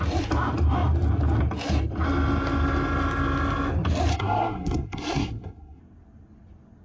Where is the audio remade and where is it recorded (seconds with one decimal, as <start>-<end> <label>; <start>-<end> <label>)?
0.0-4.1 recorded; 4.1-5.8 remade; 5.8-6.8 recorded